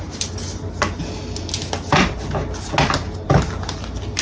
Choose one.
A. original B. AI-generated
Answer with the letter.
A